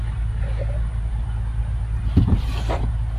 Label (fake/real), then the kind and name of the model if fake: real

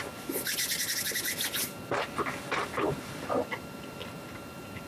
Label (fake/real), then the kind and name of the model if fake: real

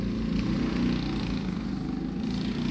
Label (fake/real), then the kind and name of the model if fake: real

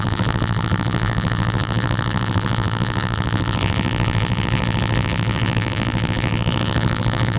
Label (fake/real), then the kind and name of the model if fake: fake, vocoder, BigVGAN v2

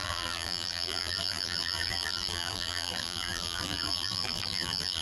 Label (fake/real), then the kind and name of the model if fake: fake, vocoder, BigVGAN v2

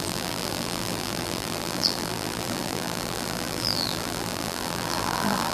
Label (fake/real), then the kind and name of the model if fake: fake, vocoder, BigVGAN v2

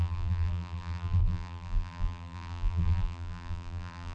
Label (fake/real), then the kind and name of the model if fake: fake, vocoder, BigVGAN v2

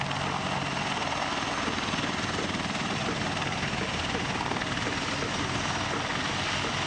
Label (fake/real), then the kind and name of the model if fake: real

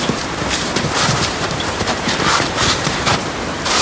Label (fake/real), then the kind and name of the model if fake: fake, vocoder, BigVGAN v2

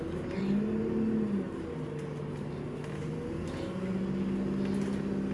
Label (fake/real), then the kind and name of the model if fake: real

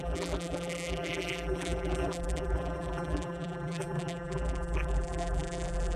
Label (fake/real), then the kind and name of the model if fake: fake, vocoder, BigVGAN v2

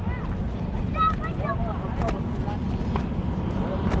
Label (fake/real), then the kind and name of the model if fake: fake, vocoder, BigVGAN v2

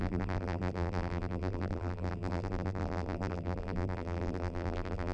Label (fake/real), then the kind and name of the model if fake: fake, vocoder, BigVGAN v2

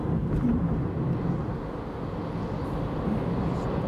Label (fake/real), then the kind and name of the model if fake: real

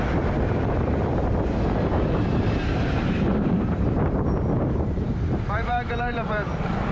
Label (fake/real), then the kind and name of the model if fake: fake, vocoder, BigVGAN v2